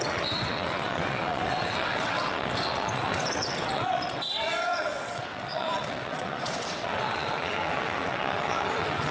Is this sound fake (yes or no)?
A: yes